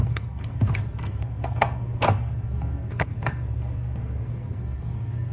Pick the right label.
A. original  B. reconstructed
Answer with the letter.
B